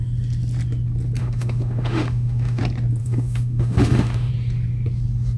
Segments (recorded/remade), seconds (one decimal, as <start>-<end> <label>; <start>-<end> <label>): 0.0-1.2 recorded; 1.2-2.6 remade; 2.6-3.0 recorded; 3.0-4.3 remade; 4.3-5.4 recorded

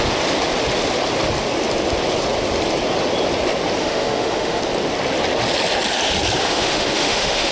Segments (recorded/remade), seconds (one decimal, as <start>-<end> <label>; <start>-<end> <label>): 0.0-3.8 recorded; 3.8-4.6 remade; 4.6-6.4 recorded; 6.4-7.5 remade

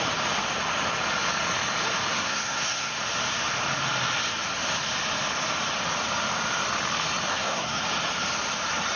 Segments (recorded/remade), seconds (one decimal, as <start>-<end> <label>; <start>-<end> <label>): 0.0-2.1 recorded; 2.1-3.0 remade; 3.0-7.3 recorded; 7.3-7.8 remade; 7.8-9.0 recorded